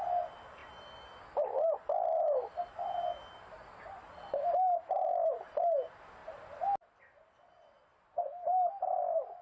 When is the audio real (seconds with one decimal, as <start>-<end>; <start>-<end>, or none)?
0.0-9.4

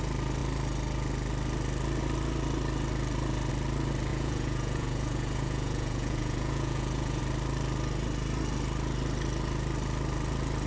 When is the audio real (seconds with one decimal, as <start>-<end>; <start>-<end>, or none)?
0.0-4.1; 7.2-10.7

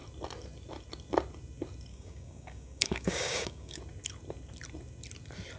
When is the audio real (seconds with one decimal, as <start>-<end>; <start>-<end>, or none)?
0.0-1.9; 3.8-5.6

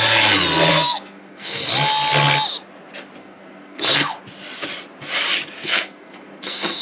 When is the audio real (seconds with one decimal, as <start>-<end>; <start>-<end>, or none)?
0.0-0.7; 1.7-3.2; 4.2-5.6

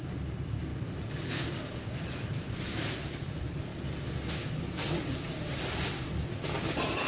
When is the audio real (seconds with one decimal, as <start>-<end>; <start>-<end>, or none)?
0.7-1.9; 3.7-5.8

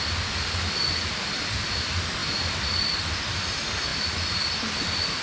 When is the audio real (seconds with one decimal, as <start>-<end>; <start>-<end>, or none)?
0.0-5.2

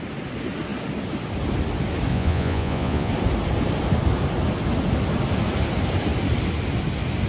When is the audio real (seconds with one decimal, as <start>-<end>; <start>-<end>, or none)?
0.0-2.1; 3.1-7.3

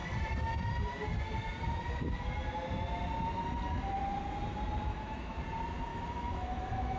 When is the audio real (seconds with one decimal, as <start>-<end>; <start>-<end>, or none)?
0.0-4.9; 5.4-5.9